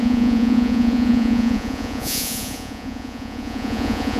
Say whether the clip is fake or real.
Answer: fake